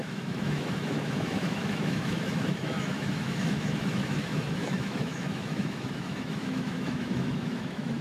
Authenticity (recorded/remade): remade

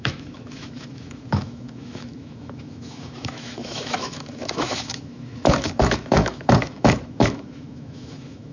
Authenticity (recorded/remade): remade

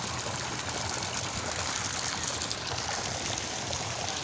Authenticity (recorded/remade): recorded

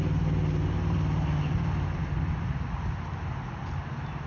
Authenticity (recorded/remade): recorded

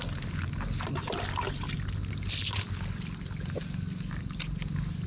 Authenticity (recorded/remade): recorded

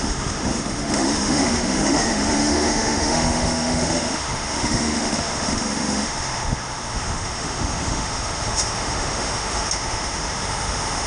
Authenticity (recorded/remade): remade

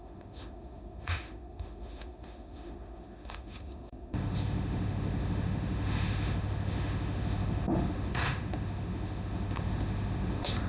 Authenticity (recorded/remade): remade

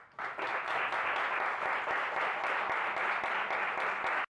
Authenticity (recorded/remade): recorded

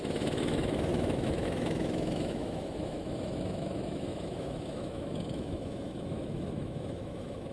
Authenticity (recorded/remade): remade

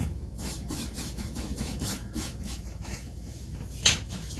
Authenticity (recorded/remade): remade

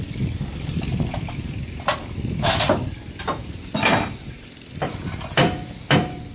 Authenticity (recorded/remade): recorded